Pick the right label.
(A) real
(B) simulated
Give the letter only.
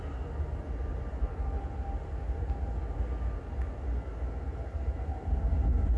A